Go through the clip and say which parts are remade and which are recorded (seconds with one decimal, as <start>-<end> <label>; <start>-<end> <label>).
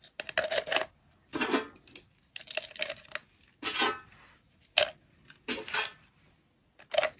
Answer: 0.0-7.2 recorded